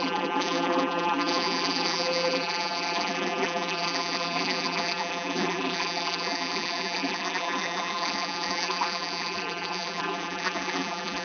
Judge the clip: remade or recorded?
remade